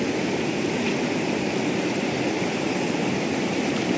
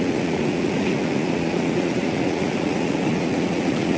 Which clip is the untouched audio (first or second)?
first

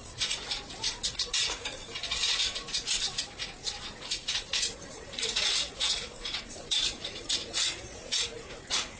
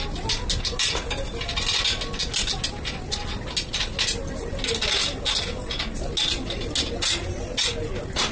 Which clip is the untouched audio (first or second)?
second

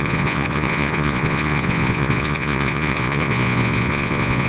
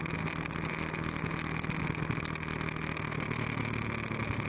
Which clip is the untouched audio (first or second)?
second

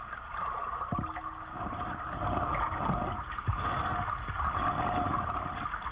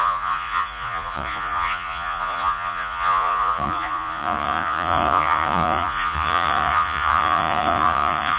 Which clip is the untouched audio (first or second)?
first